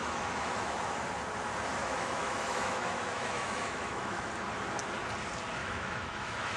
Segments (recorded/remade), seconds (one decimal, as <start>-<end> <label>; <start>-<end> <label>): 0.0-0.8 remade; 0.8-1.8 recorded; 1.8-4.3 remade; 4.3-5.6 recorded; 5.6-6.6 remade